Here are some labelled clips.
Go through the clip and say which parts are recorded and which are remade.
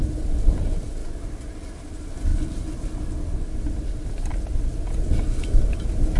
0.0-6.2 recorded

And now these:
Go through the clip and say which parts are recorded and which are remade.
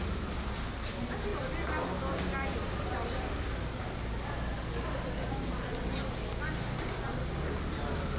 0.0-8.2 recorded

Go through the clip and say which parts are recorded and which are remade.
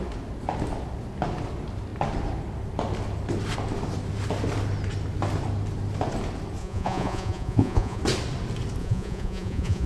0.0-6.6 recorded; 6.6-8.0 remade; 8.0-8.8 recorded; 8.8-9.9 remade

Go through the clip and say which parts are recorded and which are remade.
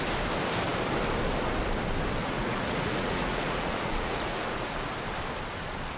0.0-2.2 recorded; 2.2-4.9 remade; 4.9-6.0 recorded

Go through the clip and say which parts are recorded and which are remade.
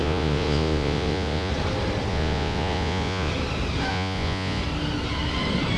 0.0-1.5 remade; 1.5-2.1 recorded; 2.1-3.3 remade; 3.3-3.9 recorded; 3.9-4.6 remade; 4.6-5.8 recorded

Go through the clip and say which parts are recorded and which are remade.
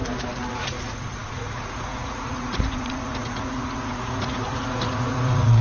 0.0-0.5 recorded; 0.5-5.6 remade